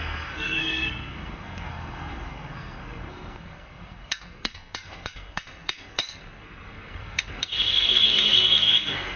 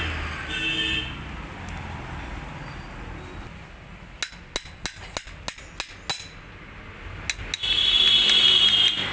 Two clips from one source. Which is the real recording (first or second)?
second